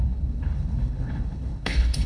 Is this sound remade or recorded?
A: remade